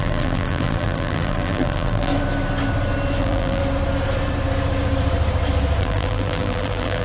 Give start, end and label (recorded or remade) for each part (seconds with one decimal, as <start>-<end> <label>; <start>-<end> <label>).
0.0-2.1 remade; 2.1-3.2 recorded; 3.2-3.6 remade; 3.6-5.8 recorded; 5.8-7.0 remade